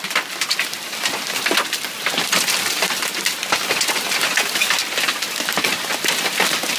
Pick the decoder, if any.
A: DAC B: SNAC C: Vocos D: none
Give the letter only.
D